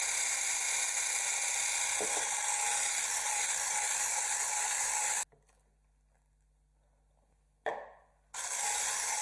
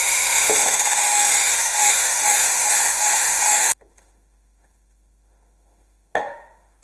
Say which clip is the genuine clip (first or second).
first